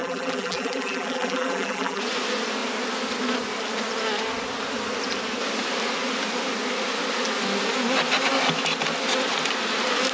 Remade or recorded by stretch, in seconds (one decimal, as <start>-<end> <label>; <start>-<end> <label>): 0.0-2.0 remade; 2.0-10.1 recorded